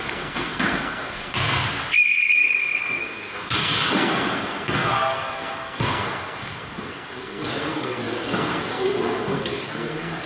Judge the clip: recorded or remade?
remade